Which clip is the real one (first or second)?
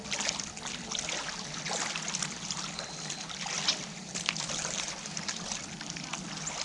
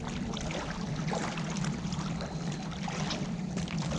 first